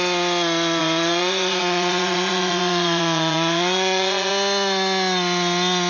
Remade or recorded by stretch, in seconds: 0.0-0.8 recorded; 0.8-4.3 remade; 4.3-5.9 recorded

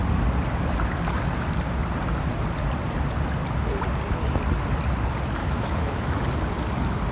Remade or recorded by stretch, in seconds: 0.0-5.4 recorded; 5.4-6.1 remade; 6.1-7.1 recorded

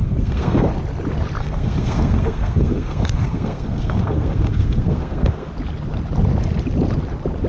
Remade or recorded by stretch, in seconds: 0.0-0.7 remade; 0.7-1.4 recorded; 1.4-5.5 remade; 5.5-7.5 recorded

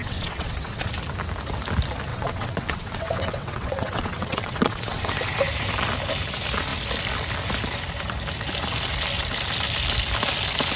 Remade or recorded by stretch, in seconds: 0.0-0.9 remade; 0.9-2.1 recorded; 2.1-5.1 remade; 5.1-10.8 recorded

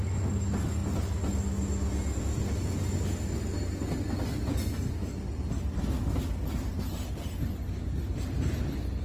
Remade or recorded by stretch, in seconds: 0.0-9.0 recorded

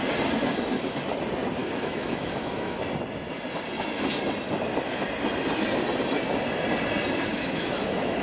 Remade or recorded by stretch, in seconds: 0.0-1.6 recorded; 1.6-2.8 remade; 2.8-7.3 recorded; 7.3-8.2 remade

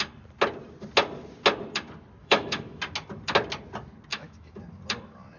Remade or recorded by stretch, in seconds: 0.0-2.2 recorded; 2.2-2.8 remade; 2.8-4.1 recorded; 4.1-4.6 remade; 4.6-5.4 recorded